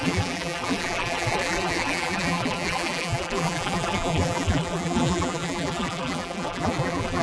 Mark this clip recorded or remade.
remade